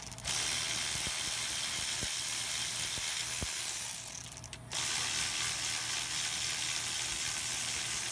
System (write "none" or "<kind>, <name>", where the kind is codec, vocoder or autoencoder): none